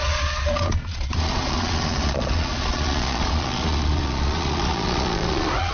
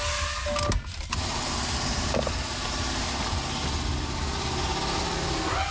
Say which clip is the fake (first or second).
first